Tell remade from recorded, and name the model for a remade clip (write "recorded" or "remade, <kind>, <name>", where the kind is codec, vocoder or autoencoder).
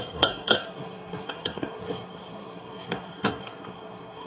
remade, codec, SNAC